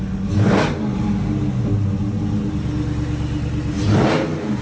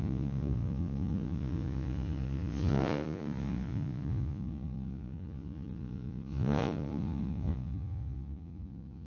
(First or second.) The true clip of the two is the first